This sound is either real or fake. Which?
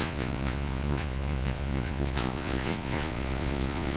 fake